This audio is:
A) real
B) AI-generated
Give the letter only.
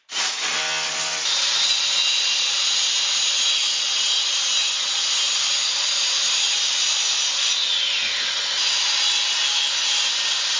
A